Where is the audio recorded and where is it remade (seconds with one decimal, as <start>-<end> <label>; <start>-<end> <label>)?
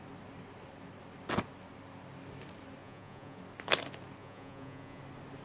0.0-2.8 recorded; 2.8-3.4 remade; 3.4-4.2 recorded; 4.2-5.0 remade; 5.0-5.4 recorded